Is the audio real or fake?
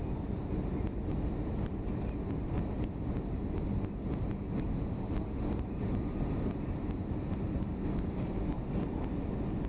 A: real